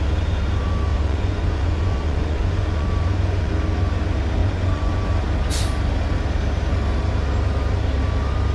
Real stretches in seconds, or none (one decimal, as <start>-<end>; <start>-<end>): 0.0-0.9; 3.5-4.4; 5.1-8.5